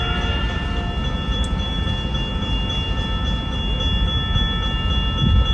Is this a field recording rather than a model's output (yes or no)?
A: yes